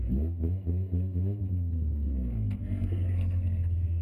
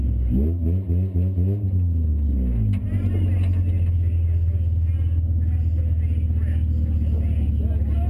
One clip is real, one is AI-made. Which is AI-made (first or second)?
first